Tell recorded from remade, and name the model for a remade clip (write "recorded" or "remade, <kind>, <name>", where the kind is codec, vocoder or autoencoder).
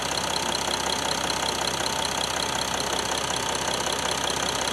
recorded